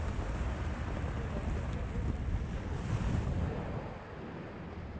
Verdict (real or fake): real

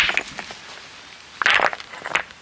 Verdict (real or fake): real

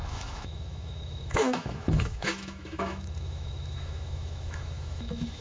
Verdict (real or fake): fake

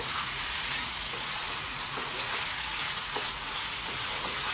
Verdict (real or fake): fake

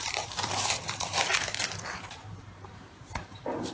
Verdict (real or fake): fake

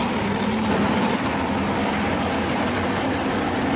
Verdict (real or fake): real